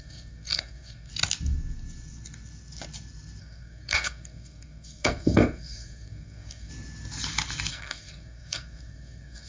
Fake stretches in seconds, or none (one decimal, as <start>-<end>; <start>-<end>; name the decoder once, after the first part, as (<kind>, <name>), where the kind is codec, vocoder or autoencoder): 0.0-1.1 (codec, SNAC); 3.4-6.7; 7.7-9.5